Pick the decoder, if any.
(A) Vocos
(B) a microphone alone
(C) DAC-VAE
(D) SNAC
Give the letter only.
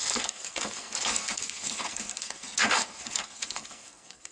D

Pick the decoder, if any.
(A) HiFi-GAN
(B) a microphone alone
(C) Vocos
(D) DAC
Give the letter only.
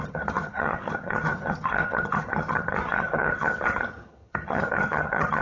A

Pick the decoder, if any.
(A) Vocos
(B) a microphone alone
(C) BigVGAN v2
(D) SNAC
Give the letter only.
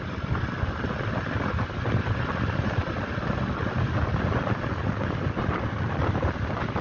B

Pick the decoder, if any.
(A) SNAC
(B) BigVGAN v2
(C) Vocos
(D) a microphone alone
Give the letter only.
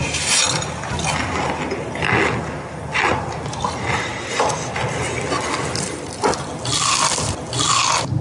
D